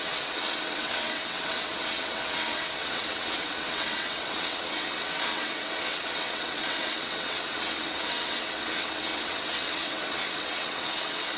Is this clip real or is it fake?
fake